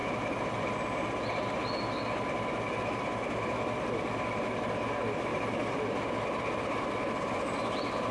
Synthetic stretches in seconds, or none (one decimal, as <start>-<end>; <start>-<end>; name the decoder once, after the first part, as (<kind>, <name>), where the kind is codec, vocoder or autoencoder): none